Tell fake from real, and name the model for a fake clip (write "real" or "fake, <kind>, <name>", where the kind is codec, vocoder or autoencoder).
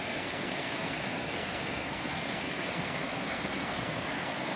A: fake, codec, SNAC